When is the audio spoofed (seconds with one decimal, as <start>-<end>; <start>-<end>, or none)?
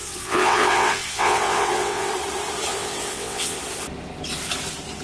0.0-2.1; 2.7-3.6